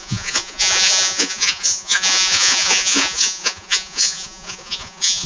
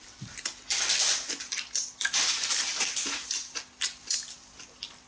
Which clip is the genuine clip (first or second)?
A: second